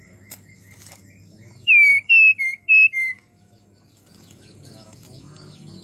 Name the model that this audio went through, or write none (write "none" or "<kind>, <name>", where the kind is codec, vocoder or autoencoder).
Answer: codec, DAC